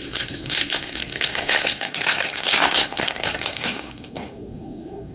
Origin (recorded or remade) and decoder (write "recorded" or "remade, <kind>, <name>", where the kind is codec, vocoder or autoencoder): remade, codec, SNAC